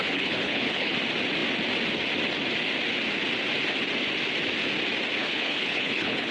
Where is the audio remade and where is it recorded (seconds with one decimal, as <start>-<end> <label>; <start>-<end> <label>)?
0.0-0.9 remade; 0.9-5.2 recorded; 5.2-6.3 remade